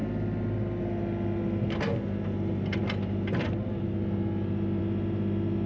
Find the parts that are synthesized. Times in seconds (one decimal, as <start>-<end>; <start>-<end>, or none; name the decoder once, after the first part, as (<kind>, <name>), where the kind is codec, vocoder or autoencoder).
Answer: none